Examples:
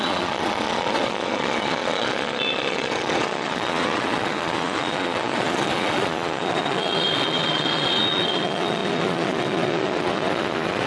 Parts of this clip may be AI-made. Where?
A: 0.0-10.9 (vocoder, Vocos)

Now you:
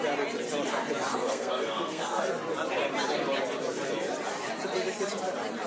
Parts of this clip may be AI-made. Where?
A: 1.1-2.2 (codec, SNAC)

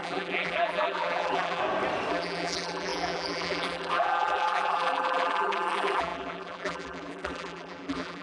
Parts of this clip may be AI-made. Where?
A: 0.0-1.6 (vocoder, BigVGAN v2); 2.1-8.2

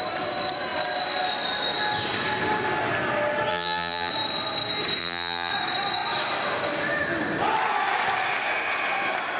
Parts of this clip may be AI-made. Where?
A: 3.5-4.1 (vocoder, BigVGAN v2); 5.0-5.5

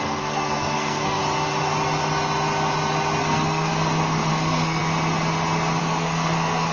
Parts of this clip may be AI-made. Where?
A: 0.0-1.2 (codec, SNAC); 3.2-3.7; 4.3-4.8; 5.8-6.7

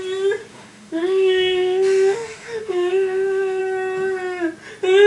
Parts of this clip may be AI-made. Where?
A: 0.5-3.6 (autoencoder, DAC-VAE)

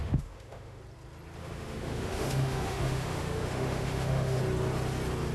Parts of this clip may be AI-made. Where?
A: 0.0-0.8 (autoencoder, DAC-VAE); 1.4-4.4